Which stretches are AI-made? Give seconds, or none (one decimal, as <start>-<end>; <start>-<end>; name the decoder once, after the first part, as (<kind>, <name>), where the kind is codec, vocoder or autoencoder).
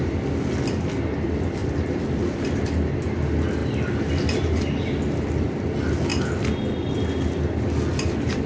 none